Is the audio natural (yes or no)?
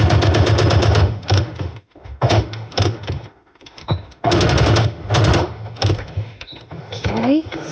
no